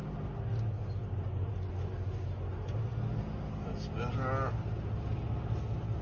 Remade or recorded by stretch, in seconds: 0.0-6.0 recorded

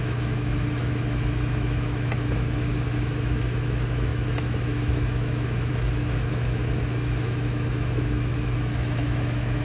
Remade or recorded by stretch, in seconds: 0.0-9.6 remade

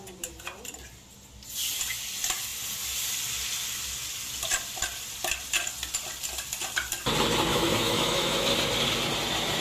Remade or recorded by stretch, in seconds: 0.0-7.5 recorded; 7.5-8.5 remade; 8.5-9.6 recorded